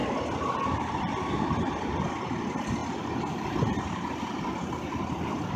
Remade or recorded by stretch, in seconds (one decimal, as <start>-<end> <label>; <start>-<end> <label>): 0.0-5.6 recorded